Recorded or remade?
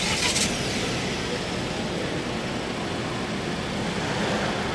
recorded